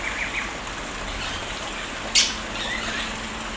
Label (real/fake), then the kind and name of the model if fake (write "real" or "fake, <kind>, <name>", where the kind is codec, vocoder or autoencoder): real